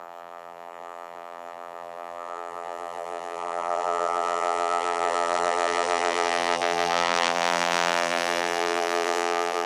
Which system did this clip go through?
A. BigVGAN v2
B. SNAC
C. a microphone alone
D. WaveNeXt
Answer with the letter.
A